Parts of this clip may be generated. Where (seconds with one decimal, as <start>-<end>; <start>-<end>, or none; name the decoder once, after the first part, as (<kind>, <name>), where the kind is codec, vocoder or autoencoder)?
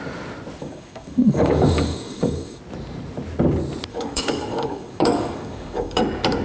0.6-2.6 (codec, DAC); 3.9-6.0